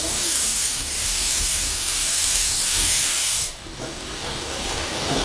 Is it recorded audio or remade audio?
remade